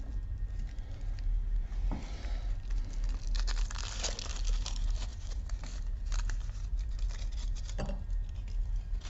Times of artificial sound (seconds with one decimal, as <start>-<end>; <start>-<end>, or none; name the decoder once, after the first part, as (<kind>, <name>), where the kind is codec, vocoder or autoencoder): none